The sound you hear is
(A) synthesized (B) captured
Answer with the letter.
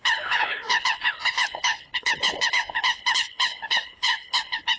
A